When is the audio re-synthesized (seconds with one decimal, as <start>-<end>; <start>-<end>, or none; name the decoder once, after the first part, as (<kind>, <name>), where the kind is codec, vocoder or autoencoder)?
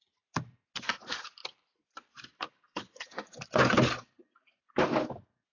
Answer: 1.4-4.7 (vocoder, BigVGAN v2)